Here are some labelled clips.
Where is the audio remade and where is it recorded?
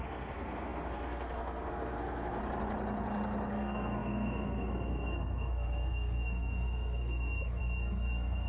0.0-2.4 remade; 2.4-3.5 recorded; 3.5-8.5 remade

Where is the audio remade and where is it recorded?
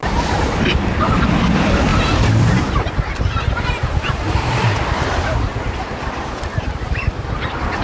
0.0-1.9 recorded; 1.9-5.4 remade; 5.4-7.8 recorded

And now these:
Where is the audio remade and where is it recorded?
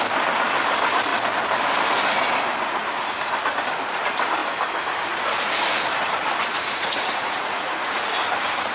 0.0-6.5 recorded; 6.5-8.1 remade; 8.1-8.7 recorded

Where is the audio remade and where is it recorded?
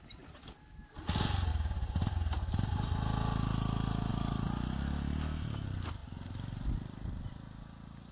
0.0-8.1 recorded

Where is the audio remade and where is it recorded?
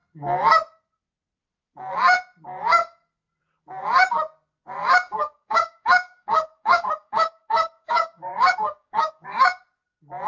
0.0-4.8 recorded; 4.8-9.6 remade; 9.6-10.3 recorded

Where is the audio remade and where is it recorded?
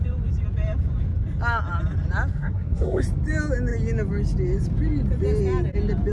0.0-2.3 recorded; 2.3-3.0 remade; 3.0-6.1 recorded